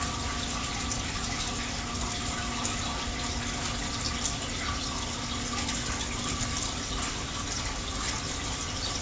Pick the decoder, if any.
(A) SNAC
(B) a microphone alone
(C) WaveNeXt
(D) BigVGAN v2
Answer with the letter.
B